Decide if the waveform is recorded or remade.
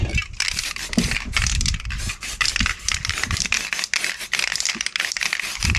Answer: recorded